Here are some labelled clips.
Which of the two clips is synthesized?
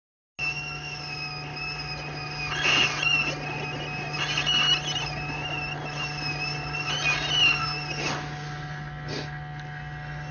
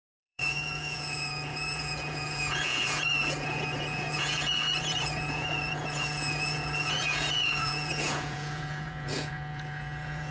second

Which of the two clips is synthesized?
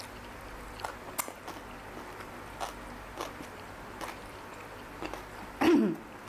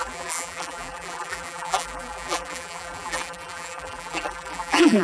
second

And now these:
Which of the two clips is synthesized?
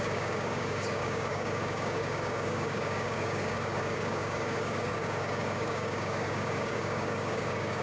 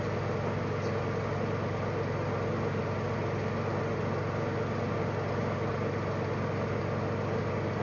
first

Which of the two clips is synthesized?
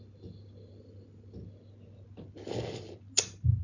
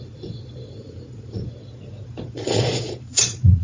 second